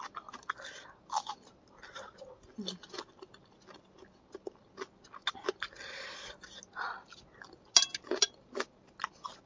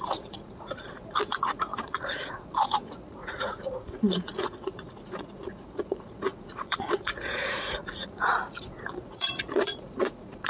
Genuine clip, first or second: first